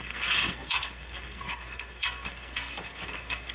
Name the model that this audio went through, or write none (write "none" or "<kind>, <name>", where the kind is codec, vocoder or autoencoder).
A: codec, SNAC